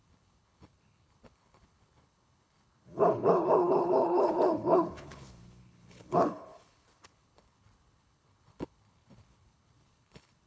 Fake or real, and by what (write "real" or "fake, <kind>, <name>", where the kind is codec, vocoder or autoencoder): fake, codec, HILCodec